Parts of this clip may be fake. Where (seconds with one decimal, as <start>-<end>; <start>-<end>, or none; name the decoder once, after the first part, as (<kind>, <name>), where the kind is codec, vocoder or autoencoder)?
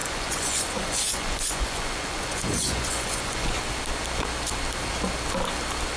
0.0-3.6 (vocoder, Vocos)